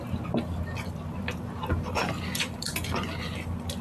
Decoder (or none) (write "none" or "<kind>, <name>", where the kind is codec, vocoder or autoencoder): vocoder, BigVGAN v2